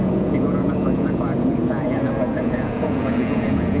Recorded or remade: remade